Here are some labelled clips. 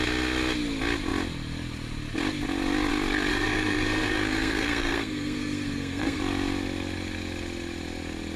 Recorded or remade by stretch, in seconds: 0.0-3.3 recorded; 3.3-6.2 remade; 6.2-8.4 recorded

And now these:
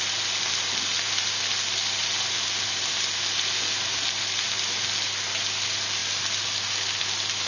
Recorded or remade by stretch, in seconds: 0.0-7.5 recorded

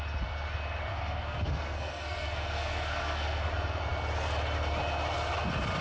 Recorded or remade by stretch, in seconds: 0.0-0.9 recorded; 0.9-3.5 remade; 3.5-5.8 recorded